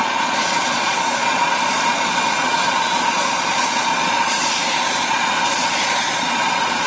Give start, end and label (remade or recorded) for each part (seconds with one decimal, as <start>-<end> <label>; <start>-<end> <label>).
0.0-6.9 remade